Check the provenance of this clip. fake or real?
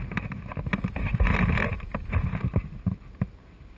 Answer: real